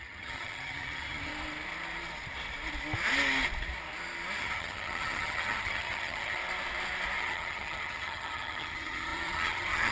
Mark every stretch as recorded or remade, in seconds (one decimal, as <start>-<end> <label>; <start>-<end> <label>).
0.0-1.3 remade; 1.3-4.4 recorded; 4.4-6.4 remade; 6.4-7.2 recorded; 7.2-9.9 remade

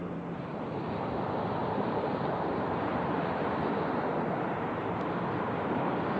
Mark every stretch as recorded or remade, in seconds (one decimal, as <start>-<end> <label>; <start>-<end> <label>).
0.0-0.6 remade; 0.6-1.6 recorded; 1.6-3.4 remade; 3.4-6.2 recorded